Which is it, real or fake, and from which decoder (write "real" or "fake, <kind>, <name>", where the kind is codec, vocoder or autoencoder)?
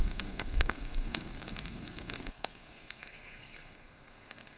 fake, codec, SNAC